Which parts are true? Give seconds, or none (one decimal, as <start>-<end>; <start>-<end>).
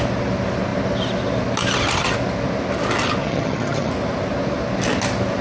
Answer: 0.0-3.2; 3.9-5.4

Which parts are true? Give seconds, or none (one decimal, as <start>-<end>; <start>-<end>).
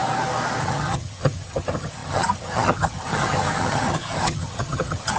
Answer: 0.0-0.6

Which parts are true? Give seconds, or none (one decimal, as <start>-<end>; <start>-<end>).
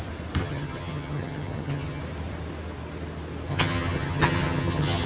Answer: 0.0-0.4; 2.0-3.5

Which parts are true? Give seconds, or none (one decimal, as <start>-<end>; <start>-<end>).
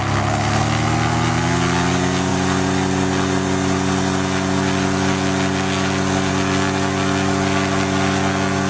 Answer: 0.0-8.7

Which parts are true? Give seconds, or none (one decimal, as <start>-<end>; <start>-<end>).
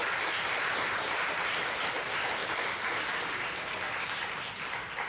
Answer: 0.0-5.1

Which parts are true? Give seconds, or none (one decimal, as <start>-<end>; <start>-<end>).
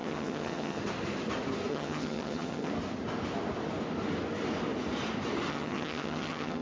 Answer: 0.8-1.7; 2.7-5.5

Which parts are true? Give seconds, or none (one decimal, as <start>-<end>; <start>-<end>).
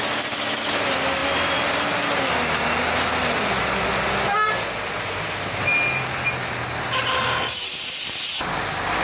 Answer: 0.0-9.0